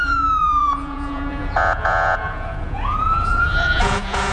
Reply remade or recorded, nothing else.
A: remade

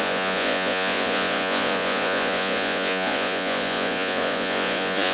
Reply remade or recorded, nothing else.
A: remade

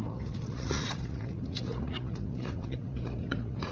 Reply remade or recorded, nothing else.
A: remade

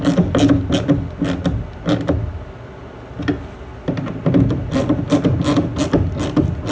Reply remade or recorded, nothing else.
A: recorded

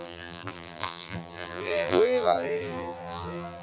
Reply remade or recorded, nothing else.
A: remade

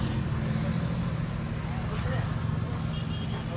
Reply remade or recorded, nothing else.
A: recorded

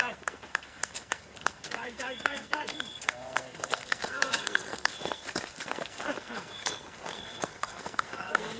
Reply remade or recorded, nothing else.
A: remade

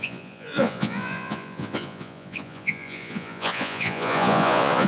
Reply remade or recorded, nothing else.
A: remade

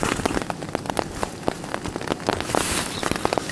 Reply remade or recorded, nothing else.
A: recorded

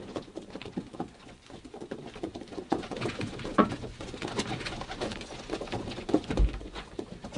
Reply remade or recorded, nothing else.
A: remade